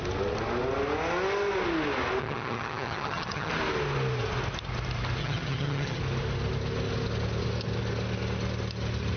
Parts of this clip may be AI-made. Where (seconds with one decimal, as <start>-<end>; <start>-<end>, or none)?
2.2-3.5; 5.2-6.0